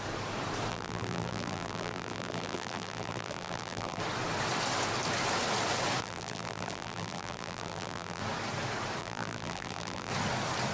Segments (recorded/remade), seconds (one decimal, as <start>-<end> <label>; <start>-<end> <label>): 0.0-0.7 recorded; 0.7-4.0 remade; 4.0-6.0 recorded; 6.0-8.2 remade; 8.2-9.0 recorded; 9.0-10.1 remade; 10.1-10.7 recorded